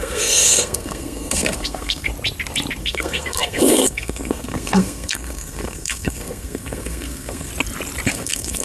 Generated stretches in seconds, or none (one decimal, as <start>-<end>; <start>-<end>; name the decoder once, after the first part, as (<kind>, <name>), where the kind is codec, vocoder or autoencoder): 0.0-2.1 (codec, SNAC); 2.8-7.5; 8.1-8.6